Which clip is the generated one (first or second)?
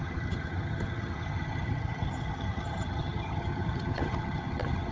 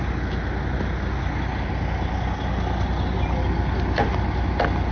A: first